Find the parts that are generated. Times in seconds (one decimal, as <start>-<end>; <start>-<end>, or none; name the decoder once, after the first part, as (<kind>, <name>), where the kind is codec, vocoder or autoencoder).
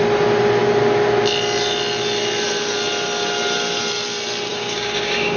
4.5-5.4 (codec, DAC)